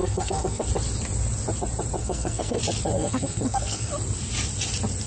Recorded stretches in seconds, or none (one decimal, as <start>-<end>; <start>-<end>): 0.7-2.0; 2.6-3.0; 3.9-5.1